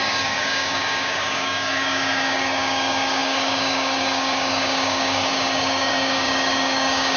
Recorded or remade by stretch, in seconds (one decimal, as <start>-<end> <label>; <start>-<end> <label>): 0.0-7.2 remade